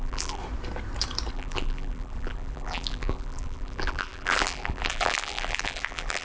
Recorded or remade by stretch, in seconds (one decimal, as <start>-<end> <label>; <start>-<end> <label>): 0.0-0.4 remade; 0.4-1.3 recorded; 1.3-6.2 remade